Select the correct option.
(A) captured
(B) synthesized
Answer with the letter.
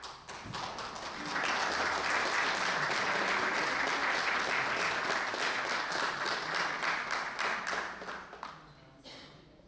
A